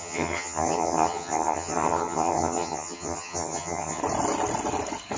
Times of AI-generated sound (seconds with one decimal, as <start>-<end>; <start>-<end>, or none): 0.0-4.0